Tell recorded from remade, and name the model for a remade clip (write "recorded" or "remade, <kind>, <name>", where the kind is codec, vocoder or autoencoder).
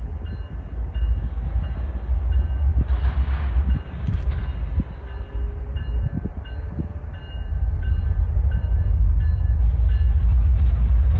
recorded